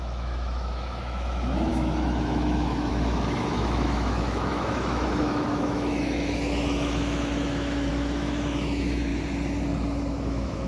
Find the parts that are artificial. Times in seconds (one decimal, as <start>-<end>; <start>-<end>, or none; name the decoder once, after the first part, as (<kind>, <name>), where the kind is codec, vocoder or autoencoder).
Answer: 0.0-9.1 (autoencoder, DAC-VAE); 10.2-10.7